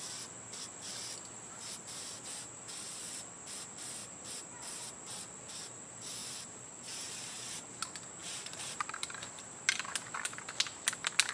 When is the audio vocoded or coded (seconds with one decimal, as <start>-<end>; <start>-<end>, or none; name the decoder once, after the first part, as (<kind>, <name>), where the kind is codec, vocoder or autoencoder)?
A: 4.0-4.9 (vocoder, BigVGAN v2); 6.2-7.7; 8.2-9.6